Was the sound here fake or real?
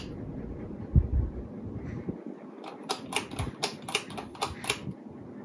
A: real